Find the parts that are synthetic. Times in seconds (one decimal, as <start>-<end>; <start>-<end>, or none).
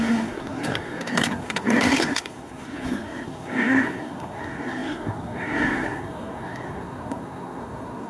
0.0-8.1